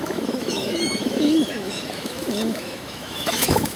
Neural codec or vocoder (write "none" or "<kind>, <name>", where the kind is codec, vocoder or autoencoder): autoencoder, DAC-VAE